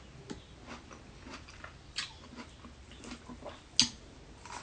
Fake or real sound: real